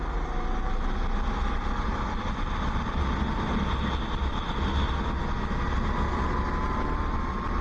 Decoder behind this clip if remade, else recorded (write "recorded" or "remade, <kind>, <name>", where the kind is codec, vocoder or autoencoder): recorded